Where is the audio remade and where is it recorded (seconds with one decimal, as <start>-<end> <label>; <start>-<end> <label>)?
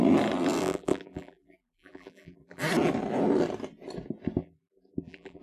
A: 0.0-0.6 recorded; 0.6-2.6 remade; 2.6-4.4 recorded; 4.4-5.4 remade